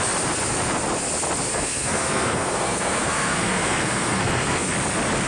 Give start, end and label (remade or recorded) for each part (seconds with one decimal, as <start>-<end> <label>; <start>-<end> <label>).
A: 0.0-1.5 recorded; 1.5-4.7 remade; 4.7-5.3 recorded